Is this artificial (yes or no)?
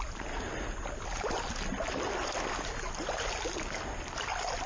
no